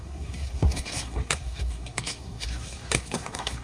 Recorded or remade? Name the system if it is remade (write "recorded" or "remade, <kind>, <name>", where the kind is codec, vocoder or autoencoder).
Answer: remade, codec, SNAC